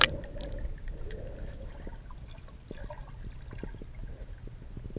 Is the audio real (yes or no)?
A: yes